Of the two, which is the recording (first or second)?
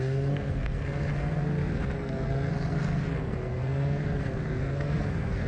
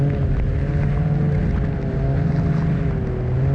second